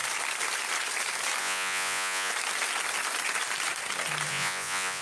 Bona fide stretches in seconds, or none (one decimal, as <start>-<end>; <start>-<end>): 0.0-1.4; 2.3-4.3